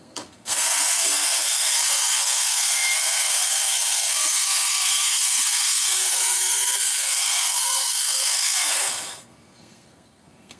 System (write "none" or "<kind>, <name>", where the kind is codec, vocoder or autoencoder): codec, SNAC